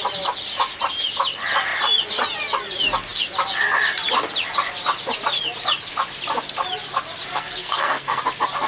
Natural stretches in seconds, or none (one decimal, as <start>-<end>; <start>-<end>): 0.0-7.3; 8.2-8.7